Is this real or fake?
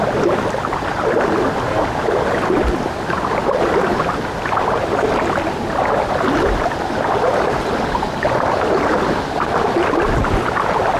real